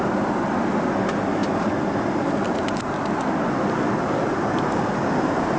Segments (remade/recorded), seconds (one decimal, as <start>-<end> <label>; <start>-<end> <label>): 0.0-5.6 recorded